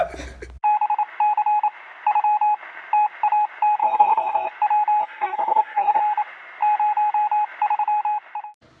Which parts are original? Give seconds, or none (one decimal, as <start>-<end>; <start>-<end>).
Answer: 0.0-3.8; 4.5-5.0; 6.0-8.8